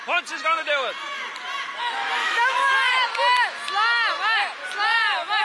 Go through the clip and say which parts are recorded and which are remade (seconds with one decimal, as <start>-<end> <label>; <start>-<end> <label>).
0.0-2.2 recorded; 2.2-2.7 remade; 2.7-5.4 recorded